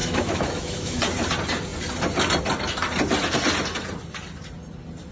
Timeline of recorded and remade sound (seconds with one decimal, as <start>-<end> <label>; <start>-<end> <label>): 0.0-1.0 remade; 1.0-5.1 recorded